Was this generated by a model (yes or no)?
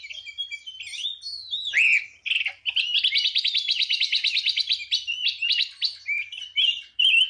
no